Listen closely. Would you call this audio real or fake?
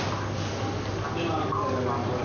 real